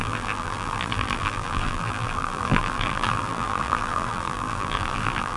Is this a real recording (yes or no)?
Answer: no